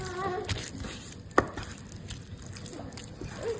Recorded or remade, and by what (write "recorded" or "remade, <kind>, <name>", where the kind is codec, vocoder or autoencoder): recorded